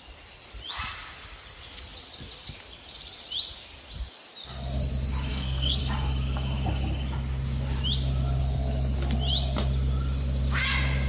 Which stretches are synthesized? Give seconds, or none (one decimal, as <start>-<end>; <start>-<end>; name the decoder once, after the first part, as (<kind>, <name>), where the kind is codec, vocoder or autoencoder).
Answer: 5.3-5.8 (codec, SNAC)